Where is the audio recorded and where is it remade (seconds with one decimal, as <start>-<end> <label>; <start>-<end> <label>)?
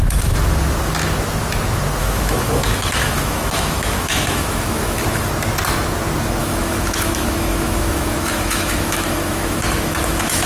0.0-2.0 recorded; 2.0-5.3 remade; 5.3-6.4 recorded; 6.4-10.5 remade